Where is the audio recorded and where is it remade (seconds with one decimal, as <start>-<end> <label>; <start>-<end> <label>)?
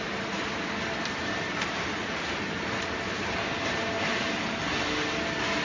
0.0-1.2 recorded; 1.2-4.6 remade; 4.6-5.6 recorded